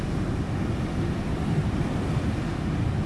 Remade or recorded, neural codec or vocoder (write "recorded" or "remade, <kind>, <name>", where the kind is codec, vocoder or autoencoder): recorded